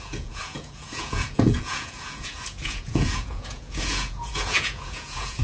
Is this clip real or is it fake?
fake